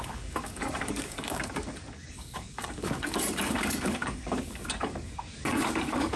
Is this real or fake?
fake